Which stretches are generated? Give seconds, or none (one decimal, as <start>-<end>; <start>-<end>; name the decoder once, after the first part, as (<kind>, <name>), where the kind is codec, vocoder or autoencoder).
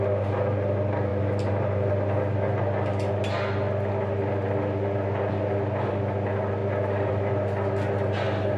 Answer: 1.1-1.9 (vocoder, BigVGAN v2)